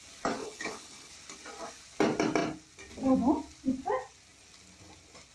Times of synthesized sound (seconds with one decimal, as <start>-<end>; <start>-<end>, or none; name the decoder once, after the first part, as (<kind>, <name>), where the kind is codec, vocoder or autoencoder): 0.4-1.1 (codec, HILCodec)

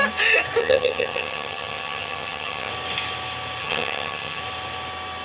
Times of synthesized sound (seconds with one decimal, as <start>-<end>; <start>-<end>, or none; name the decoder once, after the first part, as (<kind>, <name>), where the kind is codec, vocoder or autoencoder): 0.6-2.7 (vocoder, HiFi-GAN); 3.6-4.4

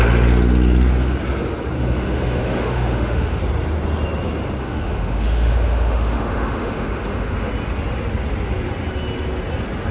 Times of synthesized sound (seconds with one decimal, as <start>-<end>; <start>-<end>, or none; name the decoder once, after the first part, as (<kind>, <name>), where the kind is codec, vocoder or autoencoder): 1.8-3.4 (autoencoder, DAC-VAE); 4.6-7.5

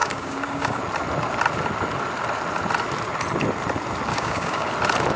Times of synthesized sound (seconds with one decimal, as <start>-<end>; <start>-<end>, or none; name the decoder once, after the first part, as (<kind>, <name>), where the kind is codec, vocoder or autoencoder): 0.0-0.8 (codec, DAC); 4.1-4.7

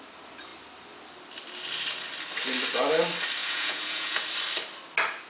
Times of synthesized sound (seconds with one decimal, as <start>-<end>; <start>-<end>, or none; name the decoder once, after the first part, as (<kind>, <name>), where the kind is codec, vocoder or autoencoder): 3.4-4.2 (vocoder, Vocos)

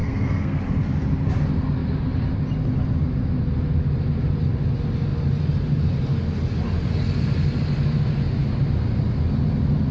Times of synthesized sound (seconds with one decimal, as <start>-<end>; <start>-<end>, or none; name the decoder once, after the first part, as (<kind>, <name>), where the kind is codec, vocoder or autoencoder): 0.0-0.6 (codec, SNAC)